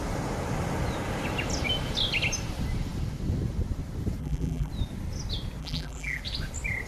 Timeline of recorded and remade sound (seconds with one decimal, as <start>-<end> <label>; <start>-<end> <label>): 0.0-4.2 recorded; 4.2-4.7 remade; 4.7-5.6 recorded; 5.6-6.2 remade; 6.2-6.9 recorded